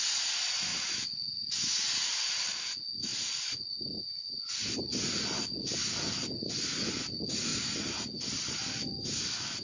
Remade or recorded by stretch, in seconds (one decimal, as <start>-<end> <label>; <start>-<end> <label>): 0.0-9.6 recorded